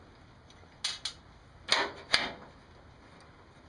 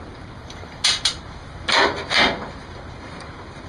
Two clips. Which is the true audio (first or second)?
first